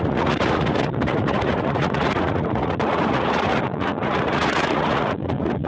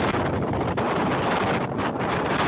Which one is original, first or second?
second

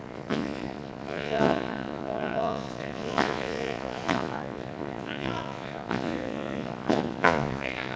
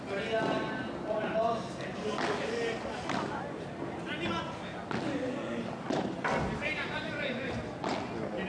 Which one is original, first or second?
second